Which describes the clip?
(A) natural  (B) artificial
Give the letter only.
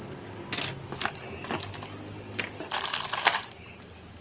A